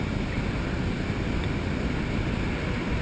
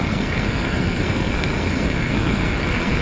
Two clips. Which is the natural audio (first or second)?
first